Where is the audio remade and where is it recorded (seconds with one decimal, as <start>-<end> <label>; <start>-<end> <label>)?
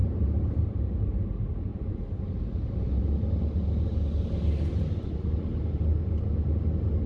0.0-0.6 remade; 0.6-1.7 recorded; 1.7-2.4 remade; 2.4-7.1 recorded